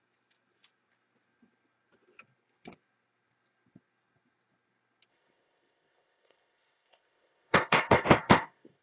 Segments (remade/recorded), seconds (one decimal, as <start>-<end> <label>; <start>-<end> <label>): 0.0-5.1 recorded; 5.1-8.8 remade